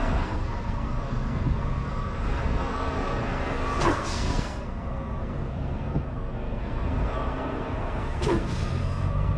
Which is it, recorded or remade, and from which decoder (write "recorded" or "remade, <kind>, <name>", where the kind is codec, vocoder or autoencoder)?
remade, codec, SNAC